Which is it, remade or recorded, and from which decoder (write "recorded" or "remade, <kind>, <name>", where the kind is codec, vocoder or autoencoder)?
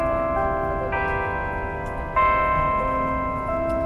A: recorded